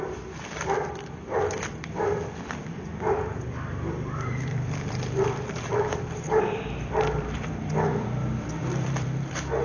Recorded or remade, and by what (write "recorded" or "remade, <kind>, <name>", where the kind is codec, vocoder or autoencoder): remade, vocoder, BigVGAN v2